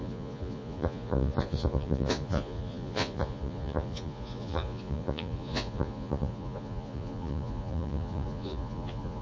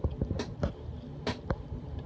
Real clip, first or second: second